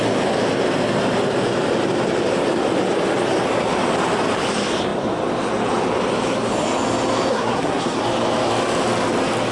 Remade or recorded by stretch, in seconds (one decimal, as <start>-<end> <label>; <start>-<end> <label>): 0.0-7.3 recorded; 7.3-8.0 remade; 8.0-9.5 recorded